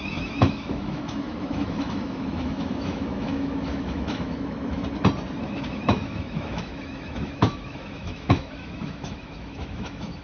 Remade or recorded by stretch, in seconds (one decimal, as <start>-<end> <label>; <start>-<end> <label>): 0.0-4.8 remade; 4.8-5.4 recorded; 5.4-10.2 remade